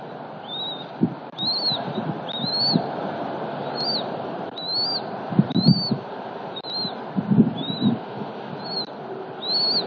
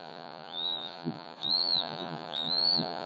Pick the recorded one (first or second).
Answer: first